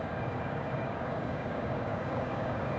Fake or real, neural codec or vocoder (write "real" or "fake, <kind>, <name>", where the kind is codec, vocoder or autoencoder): fake, codec, DAC